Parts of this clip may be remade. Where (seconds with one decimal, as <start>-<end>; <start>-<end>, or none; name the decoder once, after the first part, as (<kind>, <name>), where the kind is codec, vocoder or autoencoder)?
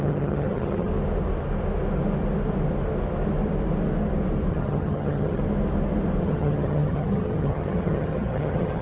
0.0-0.9 (vocoder, HiFi-GAN); 4.5-5.4; 6.2-8.8